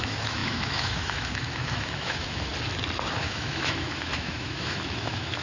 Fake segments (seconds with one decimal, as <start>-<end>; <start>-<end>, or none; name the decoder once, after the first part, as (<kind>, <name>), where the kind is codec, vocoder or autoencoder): 0.0-2.5 (autoencoder, DAC-VAE); 3.2-5.4